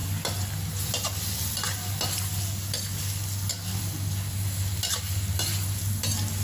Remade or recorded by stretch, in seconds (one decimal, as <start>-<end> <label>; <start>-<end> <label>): 0.0-6.4 recorded